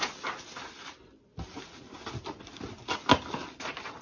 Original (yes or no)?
yes